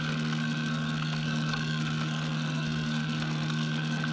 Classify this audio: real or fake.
fake